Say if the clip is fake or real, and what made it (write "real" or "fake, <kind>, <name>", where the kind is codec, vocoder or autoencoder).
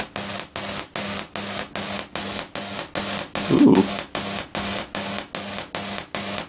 real